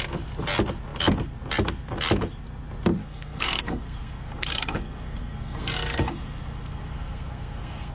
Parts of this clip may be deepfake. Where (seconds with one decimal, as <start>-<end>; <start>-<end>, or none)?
3.0-7.9